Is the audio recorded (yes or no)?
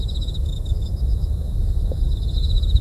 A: no